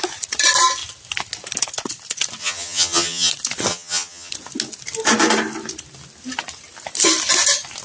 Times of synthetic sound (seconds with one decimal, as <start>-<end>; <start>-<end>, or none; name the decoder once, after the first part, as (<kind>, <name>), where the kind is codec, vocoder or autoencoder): 2.4-3.3 (vocoder, HiFi-GAN); 3.7-4.3